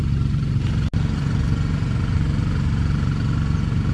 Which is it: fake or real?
real